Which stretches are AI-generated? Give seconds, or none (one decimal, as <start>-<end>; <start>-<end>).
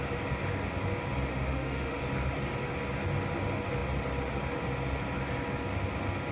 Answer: 1.3-2.0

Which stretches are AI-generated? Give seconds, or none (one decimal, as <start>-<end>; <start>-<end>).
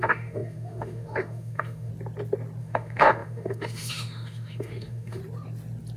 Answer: 0.0-1.9; 2.6-5.2